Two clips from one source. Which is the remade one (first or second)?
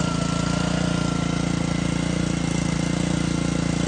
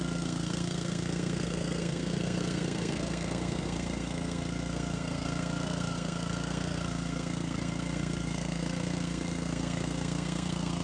second